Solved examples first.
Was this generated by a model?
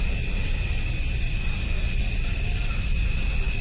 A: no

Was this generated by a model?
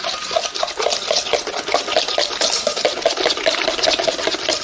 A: no